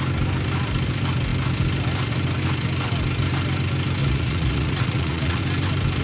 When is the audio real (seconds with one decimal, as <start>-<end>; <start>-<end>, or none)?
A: 0.0-4.0; 5.4-6.0